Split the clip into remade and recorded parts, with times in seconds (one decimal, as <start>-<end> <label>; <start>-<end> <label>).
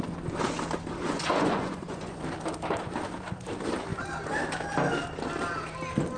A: 0.0-1.0 recorded; 1.0-2.2 remade; 2.2-6.2 recorded